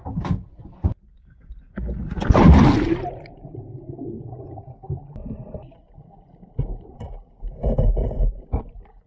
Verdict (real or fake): real